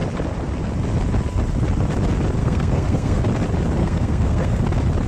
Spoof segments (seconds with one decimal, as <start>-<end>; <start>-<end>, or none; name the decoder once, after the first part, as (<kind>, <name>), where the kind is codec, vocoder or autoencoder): 2.4-3.2 (codec, SNAC); 3.8-4.6